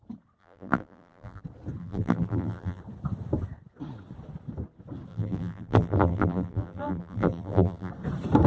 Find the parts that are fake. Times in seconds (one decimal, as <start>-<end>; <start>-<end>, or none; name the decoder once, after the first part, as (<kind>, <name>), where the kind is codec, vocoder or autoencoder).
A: 0.4-1.4 (vocoder, BigVGAN v2); 1.8-2.8; 5.1-7.9